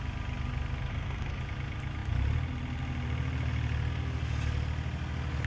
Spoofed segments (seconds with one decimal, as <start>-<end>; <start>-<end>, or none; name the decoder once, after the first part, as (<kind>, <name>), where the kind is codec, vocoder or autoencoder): 0.9-1.4 (codec, SNAC)